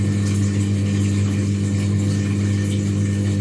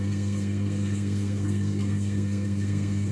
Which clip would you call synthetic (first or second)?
second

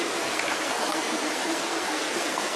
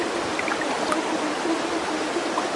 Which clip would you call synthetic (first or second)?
first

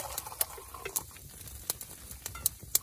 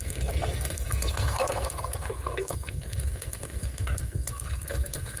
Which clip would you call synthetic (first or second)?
second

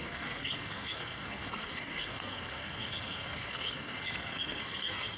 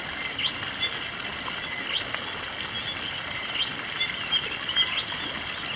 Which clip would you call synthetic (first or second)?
first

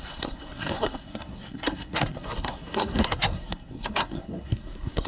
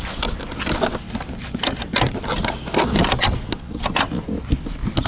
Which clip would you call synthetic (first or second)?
first